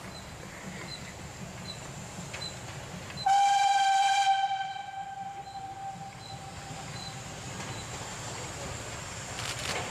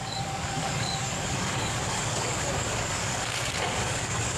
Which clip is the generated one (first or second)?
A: second